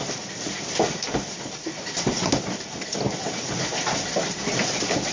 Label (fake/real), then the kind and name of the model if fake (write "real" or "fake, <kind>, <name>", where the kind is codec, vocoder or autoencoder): real